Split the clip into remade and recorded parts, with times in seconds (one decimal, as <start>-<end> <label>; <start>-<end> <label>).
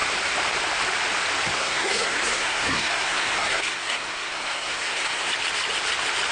0.0-1.5 recorded; 1.5-5.3 remade; 5.3-6.3 recorded